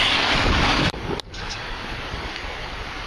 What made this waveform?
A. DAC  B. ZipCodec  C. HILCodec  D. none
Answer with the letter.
A